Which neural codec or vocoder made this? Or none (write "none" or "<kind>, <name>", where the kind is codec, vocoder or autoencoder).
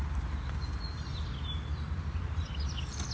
none